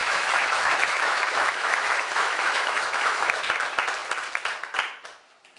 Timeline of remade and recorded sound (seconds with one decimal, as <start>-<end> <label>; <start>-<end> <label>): 0.0-3.4 remade; 3.4-5.6 recorded